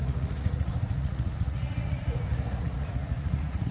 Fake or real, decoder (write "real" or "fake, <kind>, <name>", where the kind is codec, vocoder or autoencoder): fake, vocoder, Vocos